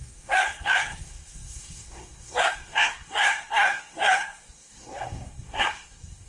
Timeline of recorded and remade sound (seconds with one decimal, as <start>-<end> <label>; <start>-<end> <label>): 0.0-6.3 remade

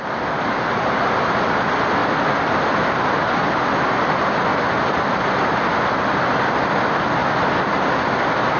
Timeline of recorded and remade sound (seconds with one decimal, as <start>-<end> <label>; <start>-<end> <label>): 0.0-4.5 recorded; 4.5-5.2 remade; 5.2-8.6 recorded

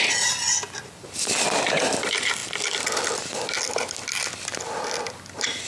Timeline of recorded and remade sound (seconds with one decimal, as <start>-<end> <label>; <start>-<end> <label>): 0.0-5.7 recorded

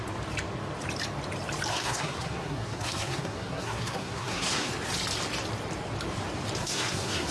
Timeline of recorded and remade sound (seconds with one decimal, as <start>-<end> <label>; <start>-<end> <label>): 0.0-1.7 recorded; 1.7-4.7 remade; 4.7-6.6 recorded; 6.6-7.3 remade

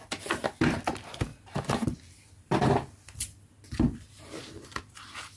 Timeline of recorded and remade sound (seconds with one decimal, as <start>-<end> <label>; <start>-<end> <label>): 0.0-5.4 recorded

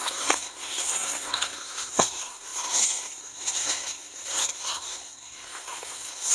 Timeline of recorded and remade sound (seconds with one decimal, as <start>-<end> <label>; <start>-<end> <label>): 0.0-6.3 remade

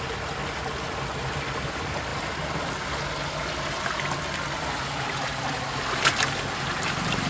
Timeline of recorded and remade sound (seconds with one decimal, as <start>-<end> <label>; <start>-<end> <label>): 0.0-7.3 recorded

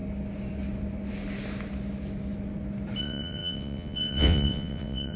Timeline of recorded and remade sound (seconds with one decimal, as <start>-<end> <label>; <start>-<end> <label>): 0.0-3.0 recorded; 3.0-5.2 remade